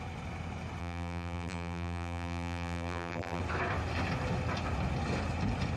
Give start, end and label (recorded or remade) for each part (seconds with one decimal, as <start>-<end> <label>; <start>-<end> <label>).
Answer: 0.0-0.8 recorded; 0.8-3.4 remade; 3.4-5.8 recorded